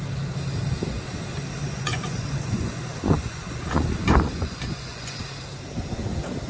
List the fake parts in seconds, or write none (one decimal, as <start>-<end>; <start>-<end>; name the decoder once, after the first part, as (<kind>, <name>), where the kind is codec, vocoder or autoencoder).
1.6-5.2 (vocoder, Vocos)